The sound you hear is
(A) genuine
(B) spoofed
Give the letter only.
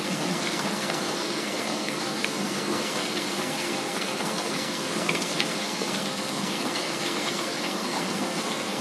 B